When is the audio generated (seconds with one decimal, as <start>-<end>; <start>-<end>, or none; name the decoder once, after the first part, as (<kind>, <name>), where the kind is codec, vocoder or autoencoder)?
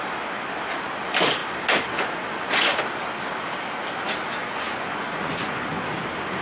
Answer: 4.4-5.8 (vocoder, Vocos)